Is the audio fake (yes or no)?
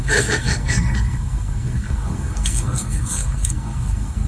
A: yes